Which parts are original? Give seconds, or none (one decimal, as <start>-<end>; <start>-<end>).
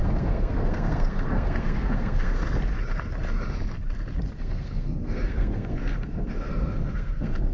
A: 2.4-4.3